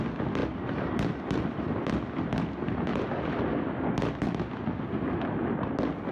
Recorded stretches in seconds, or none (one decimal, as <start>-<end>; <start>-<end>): 0.0-0.4; 1.9-6.1